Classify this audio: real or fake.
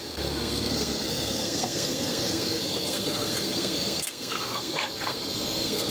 fake